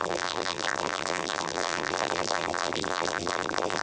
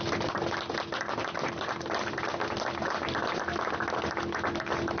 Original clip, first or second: second